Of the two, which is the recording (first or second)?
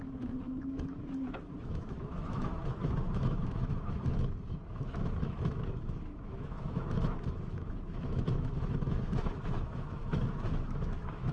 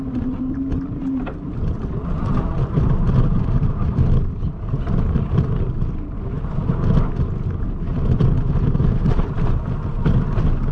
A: second